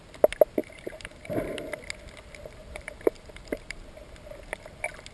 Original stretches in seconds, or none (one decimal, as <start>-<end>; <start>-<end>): 0.0-0.6; 1.6-2.6; 3.8-5.1